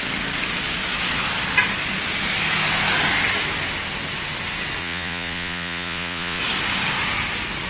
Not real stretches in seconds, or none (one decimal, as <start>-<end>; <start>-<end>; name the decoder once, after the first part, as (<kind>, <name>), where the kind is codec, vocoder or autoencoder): 4.8-6.4 (vocoder, Vocos)